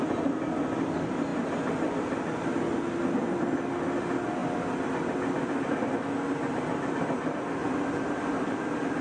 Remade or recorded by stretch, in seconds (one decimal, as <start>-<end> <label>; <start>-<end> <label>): 0.0-9.0 recorded